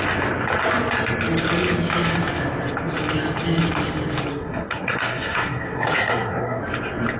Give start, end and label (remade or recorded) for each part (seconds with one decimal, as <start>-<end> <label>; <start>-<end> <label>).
0.0-4.3 recorded; 4.3-6.6 remade; 6.6-7.2 recorded